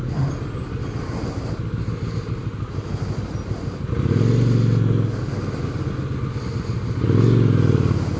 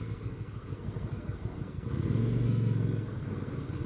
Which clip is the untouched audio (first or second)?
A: first